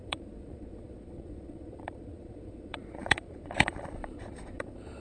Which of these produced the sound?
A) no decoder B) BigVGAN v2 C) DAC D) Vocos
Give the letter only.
D